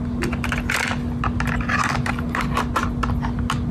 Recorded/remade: recorded